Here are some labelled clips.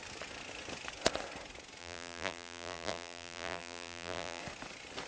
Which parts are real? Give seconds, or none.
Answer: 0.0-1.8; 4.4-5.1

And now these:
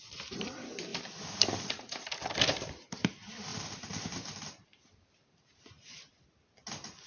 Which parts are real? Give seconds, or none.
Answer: 0.0-0.9; 3.1-3.5; 5.6-7.1

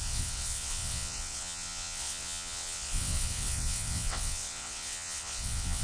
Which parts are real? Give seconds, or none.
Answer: none

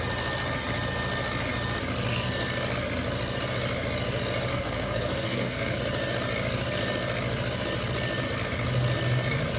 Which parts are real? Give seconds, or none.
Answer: 0.0-4.5; 5.8-9.6

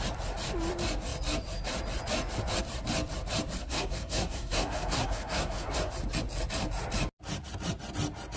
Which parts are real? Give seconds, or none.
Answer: 0.0-3.6; 5.9-8.4

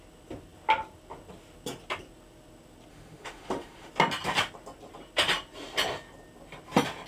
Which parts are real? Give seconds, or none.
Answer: 0.0-2.9; 3.9-7.1

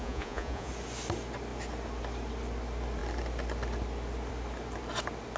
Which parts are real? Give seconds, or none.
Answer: 0.7-5.4

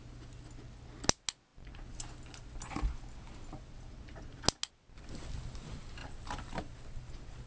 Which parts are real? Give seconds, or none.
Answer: 0.0-6.0; 6.6-7.5